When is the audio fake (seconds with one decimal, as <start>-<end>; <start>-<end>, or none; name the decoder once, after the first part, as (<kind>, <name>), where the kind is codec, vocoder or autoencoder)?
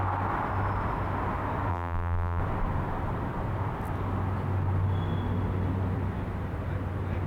1.7-2.4 (vocoder, BigVGAN v2)